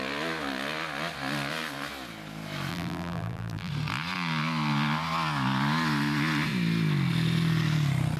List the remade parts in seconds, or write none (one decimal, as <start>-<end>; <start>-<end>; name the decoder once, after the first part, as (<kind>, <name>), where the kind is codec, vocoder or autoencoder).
2.7-3.7 (vocoder, BigVGAN v2)